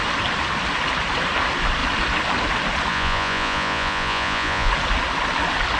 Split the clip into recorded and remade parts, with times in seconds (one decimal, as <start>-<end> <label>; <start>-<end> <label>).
0.0-2.9 recorded; 2.9-4.7 remade; 4.7-5.8 recorded